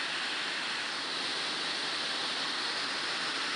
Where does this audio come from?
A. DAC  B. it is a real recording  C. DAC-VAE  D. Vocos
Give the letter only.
B